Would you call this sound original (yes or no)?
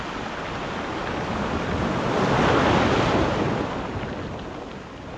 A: yes